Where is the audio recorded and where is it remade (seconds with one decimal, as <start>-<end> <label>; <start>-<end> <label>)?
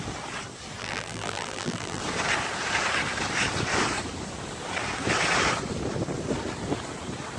0.0-0.8 recorded; 0.8-2.0 remade; 2.0-7.4 recorded